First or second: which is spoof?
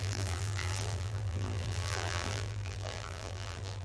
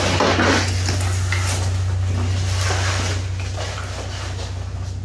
first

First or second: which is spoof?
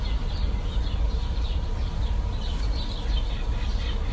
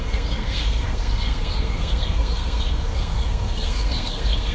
second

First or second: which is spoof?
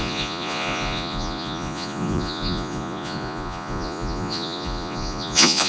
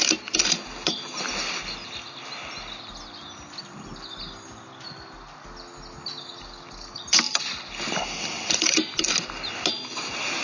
first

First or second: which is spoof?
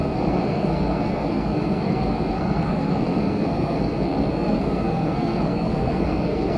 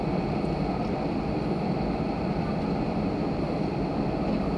first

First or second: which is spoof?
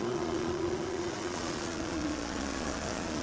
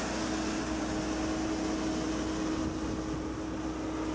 first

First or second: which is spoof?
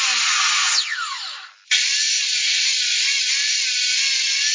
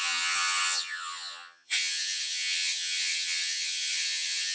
second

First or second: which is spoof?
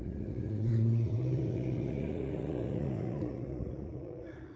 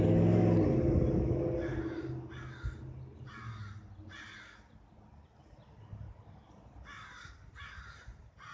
first